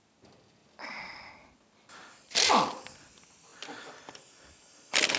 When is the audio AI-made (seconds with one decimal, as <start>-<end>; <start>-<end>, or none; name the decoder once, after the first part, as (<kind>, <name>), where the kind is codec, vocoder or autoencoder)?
0.6-1.3 (vocoder, BigVGAN v2)